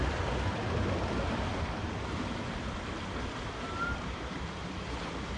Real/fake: fake